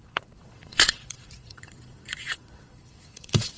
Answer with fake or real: fake